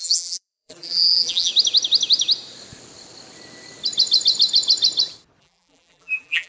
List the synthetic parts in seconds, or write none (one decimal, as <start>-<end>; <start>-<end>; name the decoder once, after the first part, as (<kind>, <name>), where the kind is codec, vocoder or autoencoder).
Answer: 0.0-1.5 (vocoder, BigVGAN v2); 5.4-6.5